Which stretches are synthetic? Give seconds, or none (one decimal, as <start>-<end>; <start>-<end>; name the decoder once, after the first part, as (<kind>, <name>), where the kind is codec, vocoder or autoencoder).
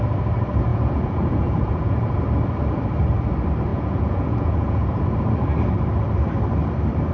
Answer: 0.7-2.2 (vocoder, Vocos); 3.7-5.0